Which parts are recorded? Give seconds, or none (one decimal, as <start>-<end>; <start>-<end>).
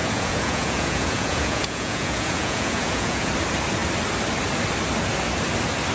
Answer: 3.3-5.9